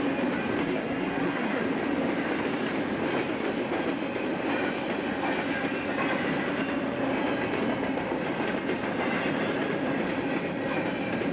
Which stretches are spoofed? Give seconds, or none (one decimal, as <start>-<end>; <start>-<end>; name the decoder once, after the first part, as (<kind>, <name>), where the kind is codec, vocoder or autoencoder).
0.6-1.6 (codec, SNAC)